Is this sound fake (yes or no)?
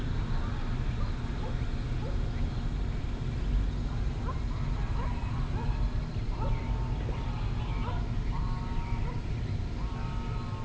no